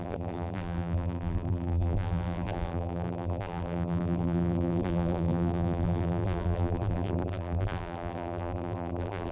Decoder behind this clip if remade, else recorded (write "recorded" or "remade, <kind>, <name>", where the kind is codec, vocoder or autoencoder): remade, vocoder, BigVGAN v2